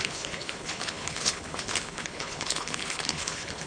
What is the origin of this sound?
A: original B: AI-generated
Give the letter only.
B